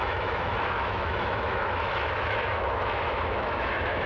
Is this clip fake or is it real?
fake